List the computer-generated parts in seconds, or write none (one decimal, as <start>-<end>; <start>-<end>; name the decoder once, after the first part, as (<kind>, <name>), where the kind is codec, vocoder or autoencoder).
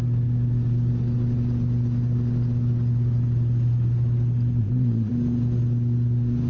4.6-5.1 (vocoder, Vocos)